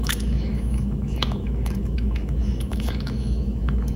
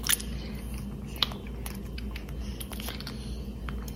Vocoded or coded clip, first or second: first